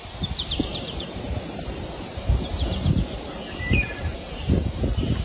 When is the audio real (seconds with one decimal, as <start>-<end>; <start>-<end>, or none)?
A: 2.5-3.3